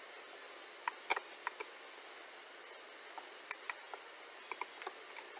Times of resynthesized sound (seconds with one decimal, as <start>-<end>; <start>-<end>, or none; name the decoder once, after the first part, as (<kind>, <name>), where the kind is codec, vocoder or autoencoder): none